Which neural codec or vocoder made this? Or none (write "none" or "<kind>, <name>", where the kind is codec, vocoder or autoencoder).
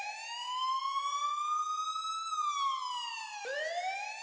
vocoder, BigVGAN v2